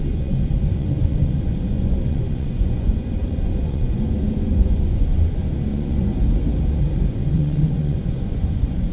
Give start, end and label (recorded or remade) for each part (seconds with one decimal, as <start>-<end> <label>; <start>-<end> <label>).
0.0-6.1 remade; 6.1-7.1 recorded; 7.1-8.9 remade